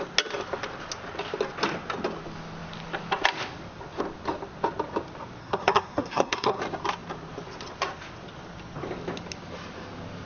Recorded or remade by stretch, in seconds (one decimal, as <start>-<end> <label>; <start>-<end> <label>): 0.0-5.4 recorded; 5.4-6.6 remade; 6.6-10.3 recorded